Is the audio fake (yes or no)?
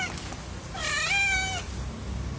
no